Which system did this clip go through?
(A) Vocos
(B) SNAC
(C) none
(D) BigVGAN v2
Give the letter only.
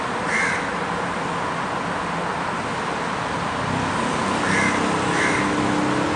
C